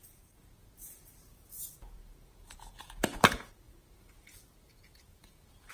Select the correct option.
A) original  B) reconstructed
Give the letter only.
B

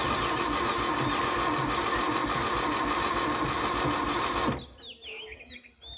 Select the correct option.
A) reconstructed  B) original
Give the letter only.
B